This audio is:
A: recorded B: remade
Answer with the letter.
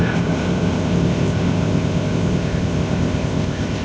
B